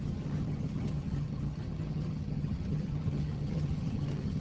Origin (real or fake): fake